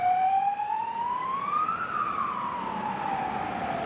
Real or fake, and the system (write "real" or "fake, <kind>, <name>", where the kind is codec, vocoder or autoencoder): fake, vocoder, BigVGAN v2